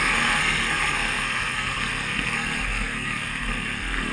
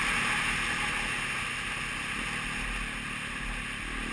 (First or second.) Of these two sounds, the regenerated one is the first